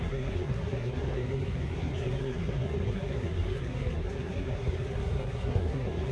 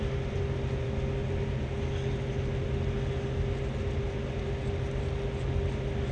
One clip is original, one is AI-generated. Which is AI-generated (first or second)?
first